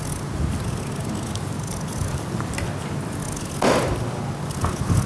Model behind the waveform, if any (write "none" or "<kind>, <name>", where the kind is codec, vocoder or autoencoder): none